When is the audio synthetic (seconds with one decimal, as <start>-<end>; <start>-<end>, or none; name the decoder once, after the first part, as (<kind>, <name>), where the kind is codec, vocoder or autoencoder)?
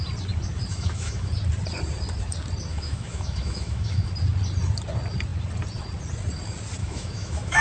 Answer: 0.7-1.3 (autoencoder, DAC-VAE); 2.7-4.1; 6.8-7.6